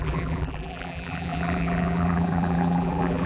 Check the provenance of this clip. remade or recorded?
remade